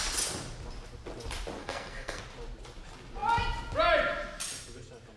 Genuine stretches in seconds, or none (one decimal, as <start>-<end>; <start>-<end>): 0.0-1.6; 2.2-5.2

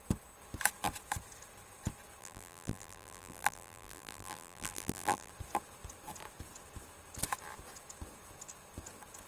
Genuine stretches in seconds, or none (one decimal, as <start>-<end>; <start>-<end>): 0.0-2.2; 5.3-9.3